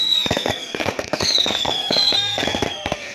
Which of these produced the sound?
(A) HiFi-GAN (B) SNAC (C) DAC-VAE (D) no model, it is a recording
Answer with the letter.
B